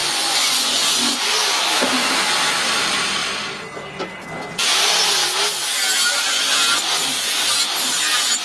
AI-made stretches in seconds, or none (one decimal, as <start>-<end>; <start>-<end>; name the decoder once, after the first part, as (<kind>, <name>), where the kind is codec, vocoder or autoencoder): 0.0-1.3 (vocoder, Vocos)